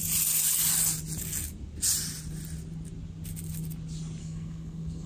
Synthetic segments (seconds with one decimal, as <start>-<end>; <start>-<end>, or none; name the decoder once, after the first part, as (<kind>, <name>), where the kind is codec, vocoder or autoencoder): 4.2-5.1 (codec, SNAC)